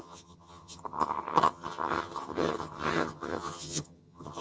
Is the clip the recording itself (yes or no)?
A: no